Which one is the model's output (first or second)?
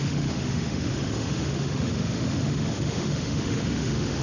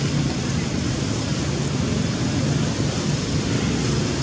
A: first